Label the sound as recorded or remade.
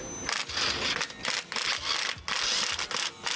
recorded